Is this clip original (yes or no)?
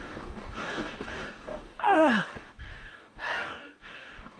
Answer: no